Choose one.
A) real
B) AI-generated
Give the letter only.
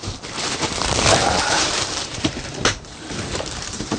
B